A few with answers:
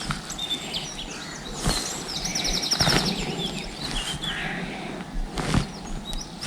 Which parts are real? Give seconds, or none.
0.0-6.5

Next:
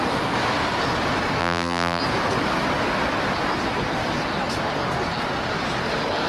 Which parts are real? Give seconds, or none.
0.0-1.4; 2.0-6.3

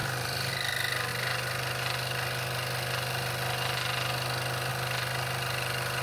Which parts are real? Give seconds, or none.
0.5-6.0